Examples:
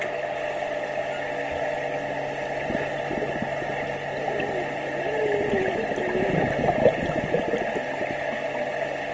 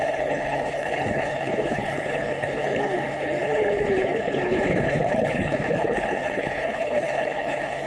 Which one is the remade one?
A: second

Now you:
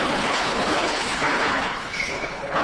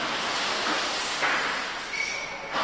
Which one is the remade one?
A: first